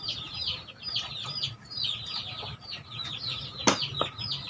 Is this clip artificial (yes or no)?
no